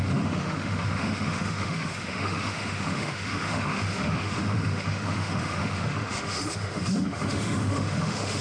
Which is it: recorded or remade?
remade